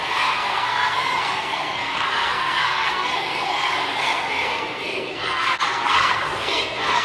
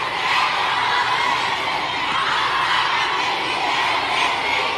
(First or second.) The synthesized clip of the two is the first